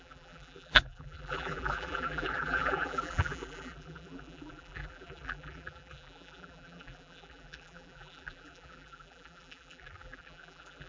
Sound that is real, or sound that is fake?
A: fake